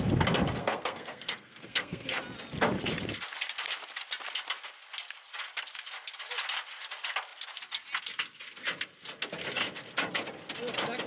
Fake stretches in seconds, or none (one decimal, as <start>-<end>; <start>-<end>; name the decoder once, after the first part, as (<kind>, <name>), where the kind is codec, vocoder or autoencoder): 0.6-2.2 (codec, SNAC)